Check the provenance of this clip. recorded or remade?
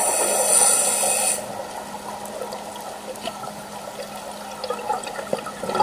recorded